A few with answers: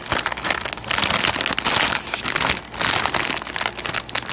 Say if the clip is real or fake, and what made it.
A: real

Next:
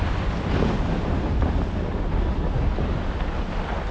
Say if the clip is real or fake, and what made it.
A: real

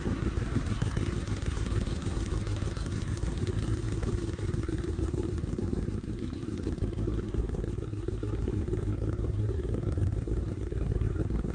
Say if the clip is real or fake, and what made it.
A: fake, codec, SNAC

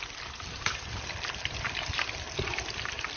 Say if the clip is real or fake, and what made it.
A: real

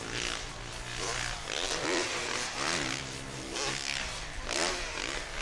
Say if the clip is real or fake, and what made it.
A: real